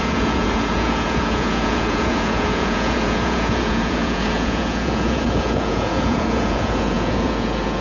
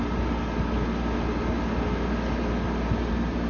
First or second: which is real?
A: second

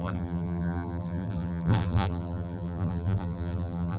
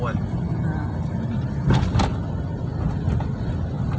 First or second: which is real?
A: second